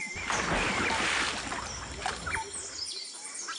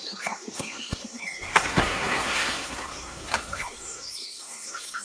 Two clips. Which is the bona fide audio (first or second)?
first